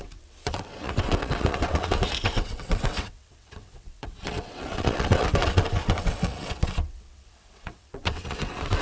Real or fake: fake